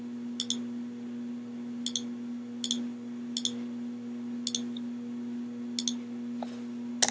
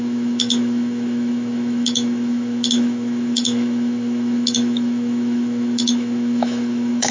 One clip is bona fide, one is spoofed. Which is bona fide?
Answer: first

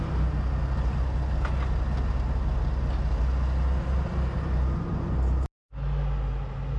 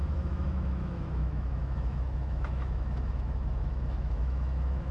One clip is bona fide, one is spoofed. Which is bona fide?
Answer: first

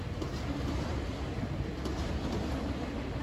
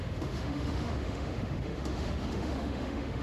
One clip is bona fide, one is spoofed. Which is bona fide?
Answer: first